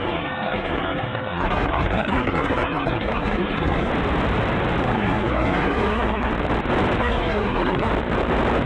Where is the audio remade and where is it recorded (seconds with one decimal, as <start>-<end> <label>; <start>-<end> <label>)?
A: 0.0-3.9 remade; 3.9-4.8 recorded; 4.8-6.3 remade; 6.3-7.0 recorded; 7.0-7.9 remade; 7.9-8.7 recorded

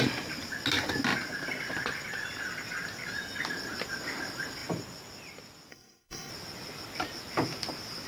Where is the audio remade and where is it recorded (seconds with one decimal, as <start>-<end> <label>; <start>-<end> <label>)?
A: 0.0-5.7 recorded; 5.7-6.3 remade; 6.3-8.1 recorded